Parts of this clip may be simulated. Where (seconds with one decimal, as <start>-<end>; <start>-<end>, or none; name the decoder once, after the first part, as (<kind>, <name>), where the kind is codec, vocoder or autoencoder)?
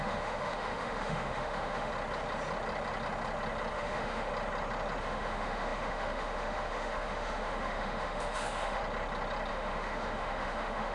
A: 0.0-1.9 (autoencoder, DAC-VAE); 3.7-4.3; 5.0-8.8; 9.5-10.9